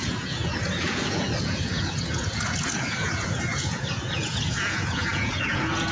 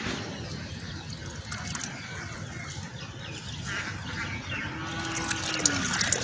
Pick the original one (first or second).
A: second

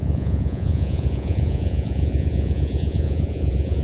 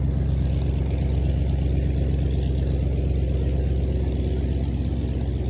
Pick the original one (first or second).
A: second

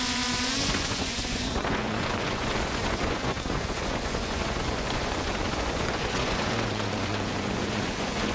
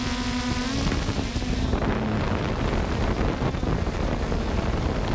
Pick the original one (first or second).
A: second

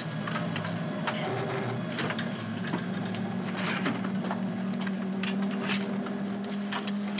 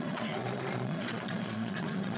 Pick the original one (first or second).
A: first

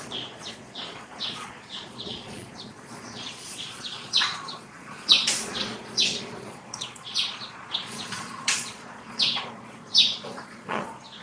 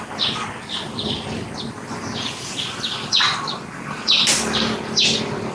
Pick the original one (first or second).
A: second